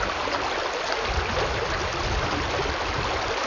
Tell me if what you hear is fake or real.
real